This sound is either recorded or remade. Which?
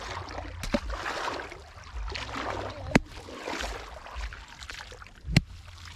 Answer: recorded